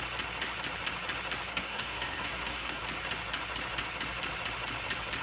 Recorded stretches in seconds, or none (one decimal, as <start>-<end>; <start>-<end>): 0.0-1.5; 2.8-5.2